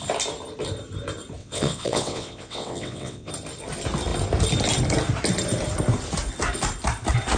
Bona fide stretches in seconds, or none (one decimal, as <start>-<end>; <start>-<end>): 0.0-1.4; 3.3-7.4